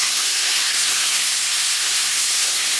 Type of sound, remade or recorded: remade